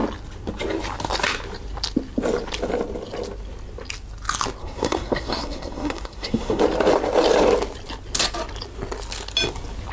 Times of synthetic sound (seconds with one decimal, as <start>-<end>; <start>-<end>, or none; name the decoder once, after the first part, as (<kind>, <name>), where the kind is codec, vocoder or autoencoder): 4.6-6.6 (codec, SNAC)